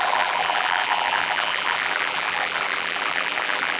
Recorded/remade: remade